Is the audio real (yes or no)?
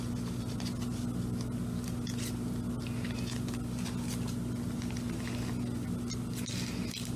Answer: yes